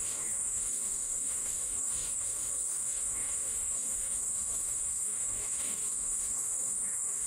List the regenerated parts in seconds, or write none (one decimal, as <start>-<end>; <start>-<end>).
0.0-7.3